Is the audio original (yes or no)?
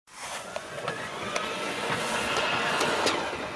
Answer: no